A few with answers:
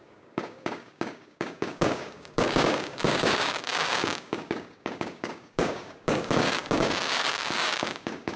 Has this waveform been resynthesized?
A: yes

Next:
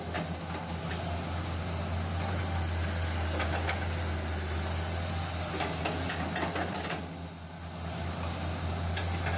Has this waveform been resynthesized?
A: no